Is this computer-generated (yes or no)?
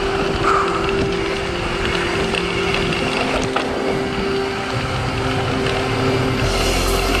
no